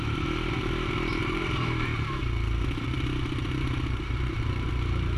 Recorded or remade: remade